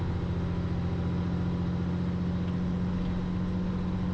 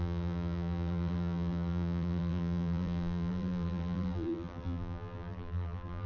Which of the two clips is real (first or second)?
first